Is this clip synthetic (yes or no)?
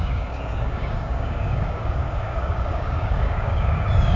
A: yes